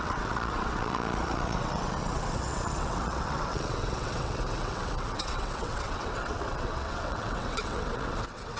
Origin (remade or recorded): remade